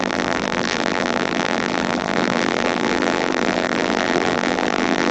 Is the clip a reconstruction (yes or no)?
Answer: yes